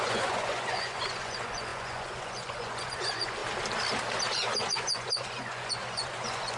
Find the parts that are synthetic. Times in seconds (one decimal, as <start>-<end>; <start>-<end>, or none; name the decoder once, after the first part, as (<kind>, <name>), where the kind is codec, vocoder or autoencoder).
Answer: 0.0-3.4 (vocoder, Vocos); 4.3-6.6